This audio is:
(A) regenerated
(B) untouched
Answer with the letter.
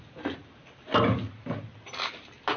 B